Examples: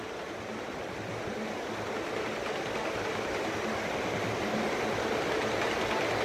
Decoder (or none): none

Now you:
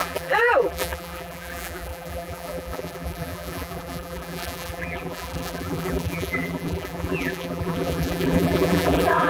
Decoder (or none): vocoder, BigVGAN v2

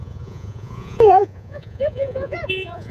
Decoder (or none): vocoder, Vocos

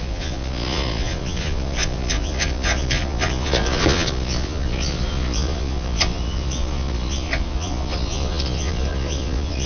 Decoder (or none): vocoder, Vocos